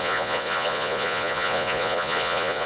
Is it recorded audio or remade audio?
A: remade